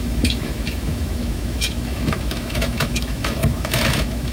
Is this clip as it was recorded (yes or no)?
no